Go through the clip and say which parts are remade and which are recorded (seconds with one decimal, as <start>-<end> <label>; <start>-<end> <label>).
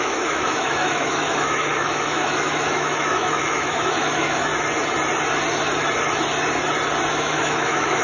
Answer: 0.0-4.5 remade; 4.5-7.1 recorded; 7.1-8.0 remade